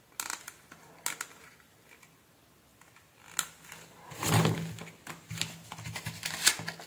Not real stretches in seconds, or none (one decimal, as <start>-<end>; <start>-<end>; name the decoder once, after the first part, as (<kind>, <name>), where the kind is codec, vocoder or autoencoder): none